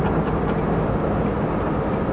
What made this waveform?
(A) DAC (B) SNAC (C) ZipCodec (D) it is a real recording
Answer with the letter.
D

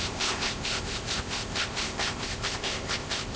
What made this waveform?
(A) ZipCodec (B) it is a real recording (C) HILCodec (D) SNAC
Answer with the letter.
A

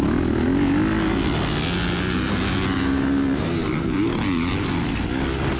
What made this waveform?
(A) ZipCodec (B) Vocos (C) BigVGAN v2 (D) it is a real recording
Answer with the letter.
D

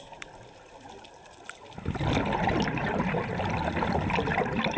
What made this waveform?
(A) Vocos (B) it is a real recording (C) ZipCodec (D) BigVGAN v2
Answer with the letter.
B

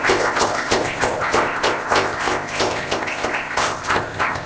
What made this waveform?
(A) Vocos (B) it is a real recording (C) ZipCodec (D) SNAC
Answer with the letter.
C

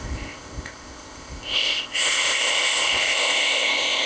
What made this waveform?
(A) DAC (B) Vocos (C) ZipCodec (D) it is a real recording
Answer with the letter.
C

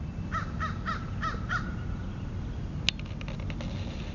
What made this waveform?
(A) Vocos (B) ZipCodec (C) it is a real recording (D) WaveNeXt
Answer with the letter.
C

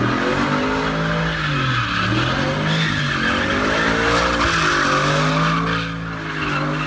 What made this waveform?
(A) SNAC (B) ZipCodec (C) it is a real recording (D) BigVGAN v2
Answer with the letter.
C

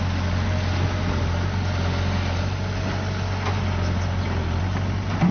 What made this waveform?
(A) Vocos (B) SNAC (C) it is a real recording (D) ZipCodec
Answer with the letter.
C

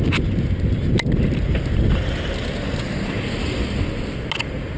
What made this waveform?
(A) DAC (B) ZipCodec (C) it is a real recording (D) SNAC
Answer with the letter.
C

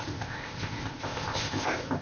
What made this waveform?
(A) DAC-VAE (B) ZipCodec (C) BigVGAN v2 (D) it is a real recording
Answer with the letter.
B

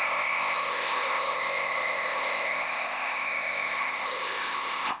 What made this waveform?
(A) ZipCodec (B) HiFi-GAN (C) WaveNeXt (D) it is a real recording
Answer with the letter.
A